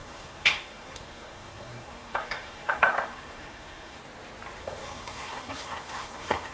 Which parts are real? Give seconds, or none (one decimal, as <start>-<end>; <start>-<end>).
4.0-4.6